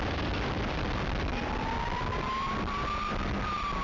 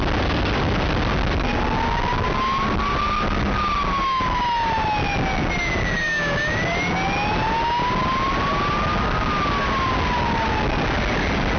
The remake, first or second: first